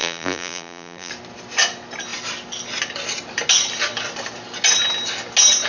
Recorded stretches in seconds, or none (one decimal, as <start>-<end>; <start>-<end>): 1.1-5.7